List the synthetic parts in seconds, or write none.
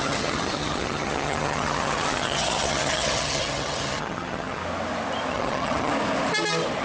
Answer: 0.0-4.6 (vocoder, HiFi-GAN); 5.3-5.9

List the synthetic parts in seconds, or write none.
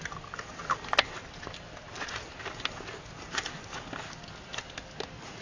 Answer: none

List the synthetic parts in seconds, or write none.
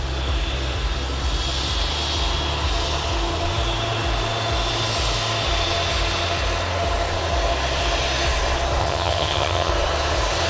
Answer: 8.8-9.7 (vocoder, HiFi-GAN)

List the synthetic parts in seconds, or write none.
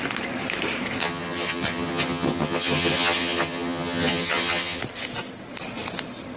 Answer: 1.0-4.8 (vocoder, HiFi-GAN)